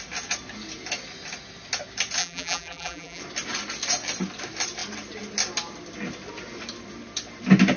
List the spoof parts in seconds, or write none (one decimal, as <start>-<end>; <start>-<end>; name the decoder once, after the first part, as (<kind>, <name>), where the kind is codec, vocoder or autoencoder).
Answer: 2.2-3.2 (vocoder, BigVGAN v2)